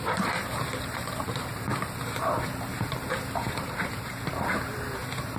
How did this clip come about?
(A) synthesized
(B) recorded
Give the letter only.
A